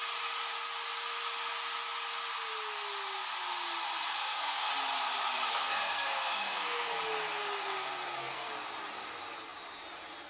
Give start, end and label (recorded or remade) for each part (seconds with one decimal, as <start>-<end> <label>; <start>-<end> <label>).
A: 0.0-4.2 recorded; 4.2-4.7 remade; 4.7-5.5 recorded; 5.5-7.0 remade; 7.0-7.4 recorded; 7.4-8.5 remade; 8.5-10.3 recorded